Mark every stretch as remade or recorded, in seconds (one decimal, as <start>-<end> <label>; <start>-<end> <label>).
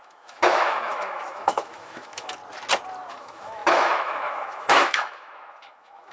0.0-2.4 remade; 2.4-3.1 recorded; 3.1-6.1 remade